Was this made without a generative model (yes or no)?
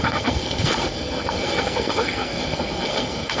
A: no